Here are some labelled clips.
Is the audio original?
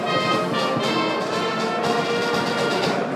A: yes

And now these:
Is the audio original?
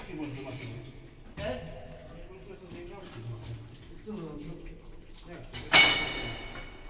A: yes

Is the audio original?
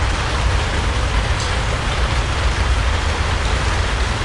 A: yes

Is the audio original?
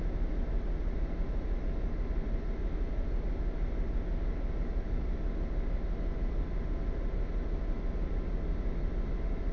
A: yes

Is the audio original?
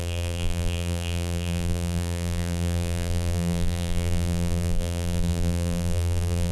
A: no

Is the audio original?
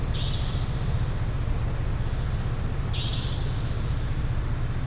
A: yes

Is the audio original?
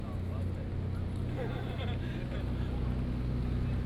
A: yes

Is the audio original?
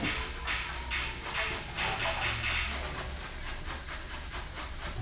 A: yes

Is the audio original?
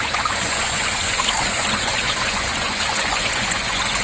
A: no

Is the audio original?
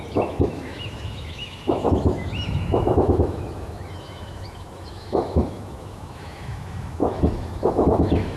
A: no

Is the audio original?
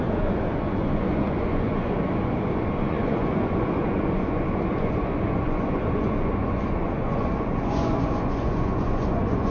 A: no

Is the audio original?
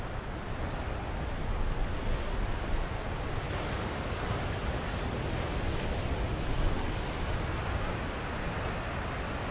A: yes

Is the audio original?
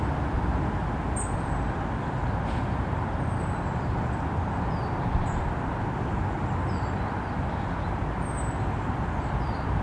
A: yes